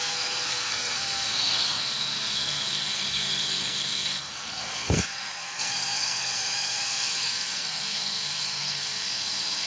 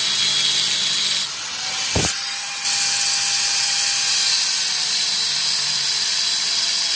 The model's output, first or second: first